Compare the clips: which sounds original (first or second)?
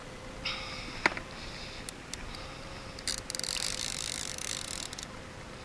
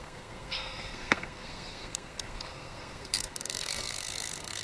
first